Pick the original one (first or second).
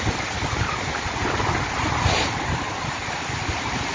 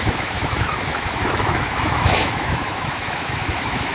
first